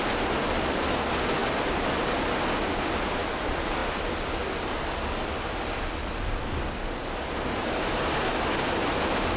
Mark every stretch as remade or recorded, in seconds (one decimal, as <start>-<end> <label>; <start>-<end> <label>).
0.0-9.4 recorded